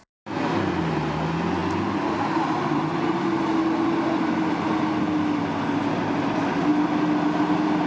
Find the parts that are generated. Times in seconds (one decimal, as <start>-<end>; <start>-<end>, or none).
none